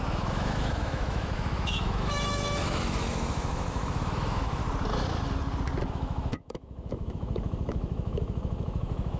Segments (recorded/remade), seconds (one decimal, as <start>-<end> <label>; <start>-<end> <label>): 0.0-4.6 remade; 4.6-5.9 recorded; 5.9-9.2 remade